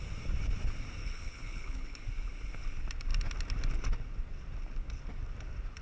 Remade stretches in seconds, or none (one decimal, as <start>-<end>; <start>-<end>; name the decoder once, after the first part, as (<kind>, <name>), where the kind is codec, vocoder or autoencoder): 1.0-2.0 (codec, HILCodec)